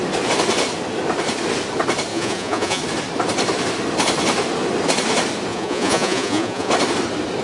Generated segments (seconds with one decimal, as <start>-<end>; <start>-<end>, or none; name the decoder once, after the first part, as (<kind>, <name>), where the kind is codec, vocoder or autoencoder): 2.1-2.8 (vocoder, Vocos); 5.5-6.7